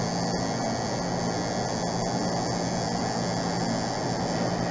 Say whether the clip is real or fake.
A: real